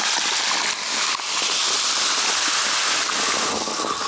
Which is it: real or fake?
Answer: real